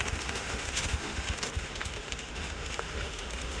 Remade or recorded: remade